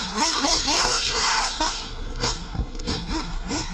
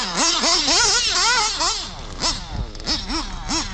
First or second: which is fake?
first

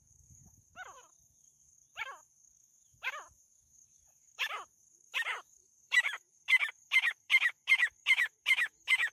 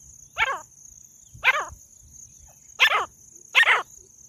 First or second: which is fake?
first